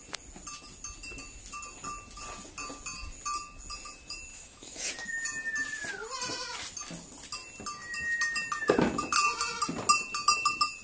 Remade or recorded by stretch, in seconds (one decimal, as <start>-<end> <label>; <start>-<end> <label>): 0.0-4.3 recorded; 4.3-4.9 remade; 4.9-10.8 recorded